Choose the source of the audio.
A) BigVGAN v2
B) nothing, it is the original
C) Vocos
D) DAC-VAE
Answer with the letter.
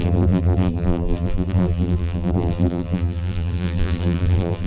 A